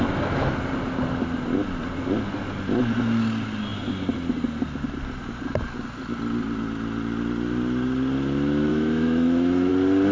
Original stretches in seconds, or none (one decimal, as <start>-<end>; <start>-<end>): 0.0-8.7; 9.7-10.1